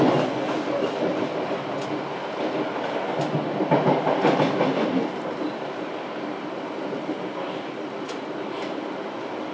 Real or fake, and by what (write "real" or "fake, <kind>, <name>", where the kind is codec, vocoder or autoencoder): real